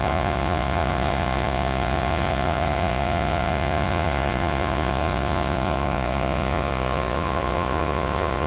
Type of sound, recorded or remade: remade